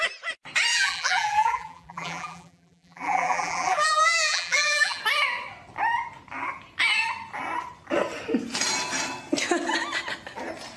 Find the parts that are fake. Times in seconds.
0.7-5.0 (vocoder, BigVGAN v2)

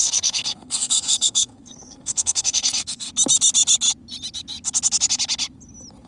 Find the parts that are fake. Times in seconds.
0.0-3.1 (codec, SNAC)

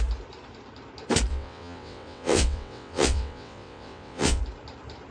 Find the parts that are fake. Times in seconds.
1.3-4.4 (vocoder, WaveNeXt)

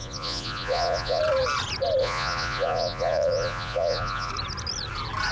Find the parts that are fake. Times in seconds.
0.0-1.2 (vocoder, Vocos); 2.0-4.3

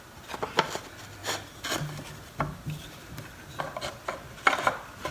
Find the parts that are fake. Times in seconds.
none

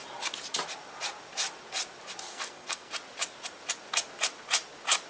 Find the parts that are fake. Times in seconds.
2.3-2.9 (codec, SNAC)

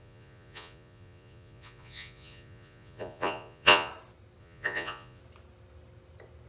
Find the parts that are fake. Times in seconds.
0.0-3.9 (vocoder, Vocos); 4.4-5.2

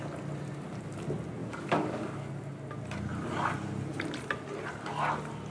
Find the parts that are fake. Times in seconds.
1.4-2.3 (codec, DAC)